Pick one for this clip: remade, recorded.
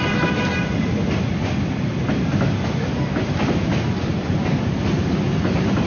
remade